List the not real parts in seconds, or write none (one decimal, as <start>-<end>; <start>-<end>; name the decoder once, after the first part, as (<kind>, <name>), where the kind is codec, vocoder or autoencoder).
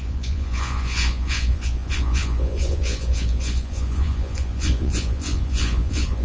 0.0-6.2 (vocoder, Vocos)